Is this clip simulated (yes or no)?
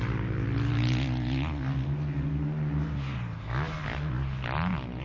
no